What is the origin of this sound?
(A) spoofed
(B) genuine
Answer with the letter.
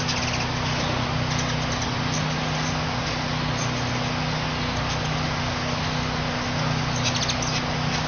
B